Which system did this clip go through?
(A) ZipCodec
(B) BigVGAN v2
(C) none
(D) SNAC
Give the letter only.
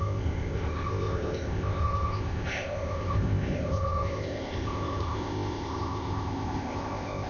A